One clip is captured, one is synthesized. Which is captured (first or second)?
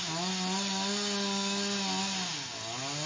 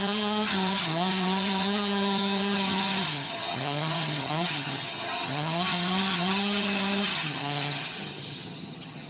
first